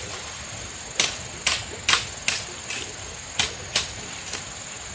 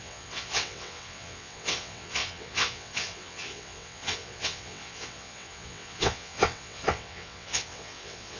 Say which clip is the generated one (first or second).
second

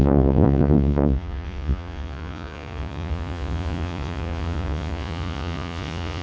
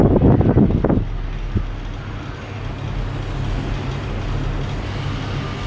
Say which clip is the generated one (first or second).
first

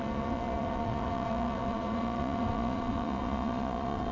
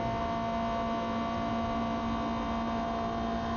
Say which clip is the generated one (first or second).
first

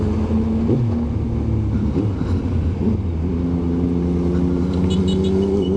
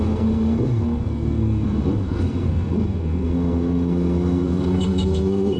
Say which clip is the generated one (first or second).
second